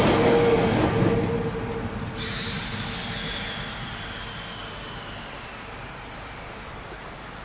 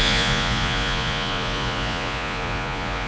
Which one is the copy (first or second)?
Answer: second